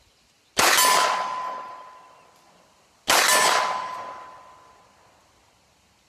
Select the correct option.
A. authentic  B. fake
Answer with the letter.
A